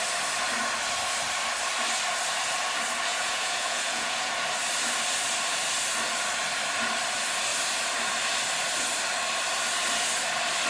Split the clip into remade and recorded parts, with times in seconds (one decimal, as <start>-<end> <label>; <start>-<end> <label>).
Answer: 0.0-3.1 recorded; 3.1-4.3 remade; 4.3-10.7 recorded